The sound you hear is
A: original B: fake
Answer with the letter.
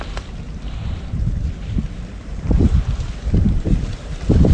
B